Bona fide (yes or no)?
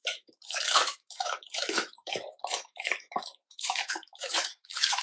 no